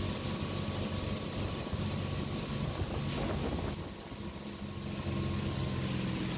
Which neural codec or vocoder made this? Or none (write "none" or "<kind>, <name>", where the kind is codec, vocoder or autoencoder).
none